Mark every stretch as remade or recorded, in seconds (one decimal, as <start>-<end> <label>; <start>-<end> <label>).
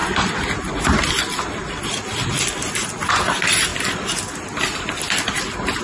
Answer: 0.0-5.8 recorded